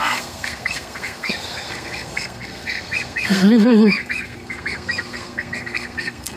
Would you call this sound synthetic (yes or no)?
yes